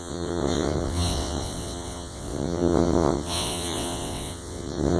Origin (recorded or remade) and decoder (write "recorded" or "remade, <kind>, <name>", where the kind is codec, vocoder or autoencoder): remade, vocoder, WaveNeXt